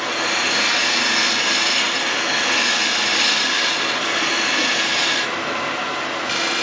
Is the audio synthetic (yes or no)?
no